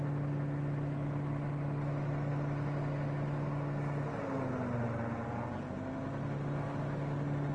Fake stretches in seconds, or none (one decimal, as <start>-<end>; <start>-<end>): none